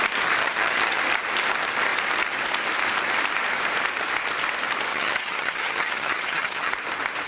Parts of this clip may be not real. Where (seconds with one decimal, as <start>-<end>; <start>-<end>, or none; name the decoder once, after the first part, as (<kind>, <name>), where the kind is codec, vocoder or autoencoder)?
0.4-1.0 (vocoder, HiFi-GAN); 4.9-6.7